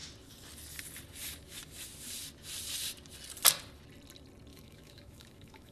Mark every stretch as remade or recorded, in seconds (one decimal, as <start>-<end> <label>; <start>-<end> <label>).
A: 0.0-4.5 recorded; 4.5-5.7 remade